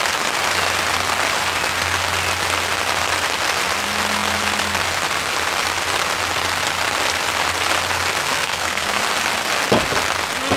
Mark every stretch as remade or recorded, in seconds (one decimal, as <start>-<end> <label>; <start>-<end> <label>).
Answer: 0.0-8.2 recorded; 8.2-9.0 remade; 9.0-10.6 recorded